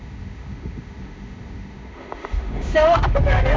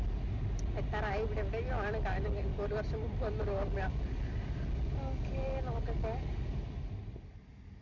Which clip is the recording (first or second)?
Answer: second